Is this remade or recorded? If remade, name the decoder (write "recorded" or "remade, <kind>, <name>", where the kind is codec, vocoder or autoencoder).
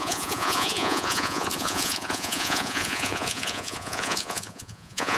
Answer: remade, vocoder, Vocos